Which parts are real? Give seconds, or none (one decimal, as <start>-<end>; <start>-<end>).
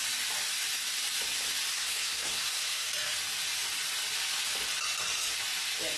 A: 0.0-1.7; 2.9-6.0